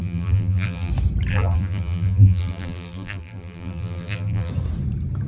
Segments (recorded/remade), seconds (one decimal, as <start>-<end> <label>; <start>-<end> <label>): 0.0-0.9 remade; 0.9-1.3 recorded; 1.3-4.5 remade; 4.5-5.3 recorded

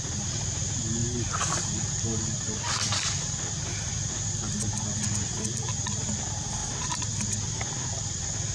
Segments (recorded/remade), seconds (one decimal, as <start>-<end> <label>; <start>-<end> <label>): 0.0-6.6 recorded; 6.6-7.4 remade; 7.4-8.5 recorded

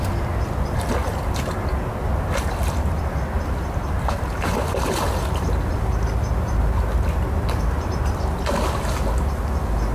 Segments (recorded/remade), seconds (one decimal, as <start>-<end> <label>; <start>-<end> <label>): 0.0-1.0 recorded; 1.0-1.7 remade; 1.7-9.9 recorded

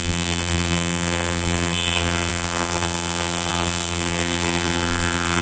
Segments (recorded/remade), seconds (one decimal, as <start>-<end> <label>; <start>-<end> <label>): 0.0-5.4 remade

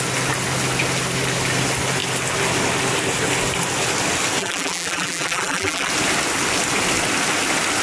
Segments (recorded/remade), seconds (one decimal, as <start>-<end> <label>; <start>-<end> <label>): 0.0-4.4 recorded; 4.4-5.9 remade; 5.9-7.8 recorded

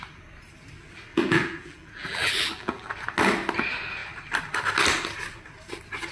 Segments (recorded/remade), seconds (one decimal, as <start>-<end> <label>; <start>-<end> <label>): 0.0-1.1 recorded; 1.1-2.9 remade; 2.9-6.1 recorded

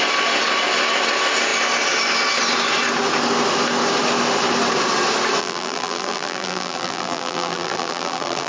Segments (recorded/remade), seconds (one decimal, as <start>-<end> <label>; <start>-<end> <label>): 0.0-5.4 recorded; 5.4-8.5 remade